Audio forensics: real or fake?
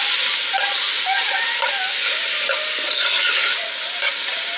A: real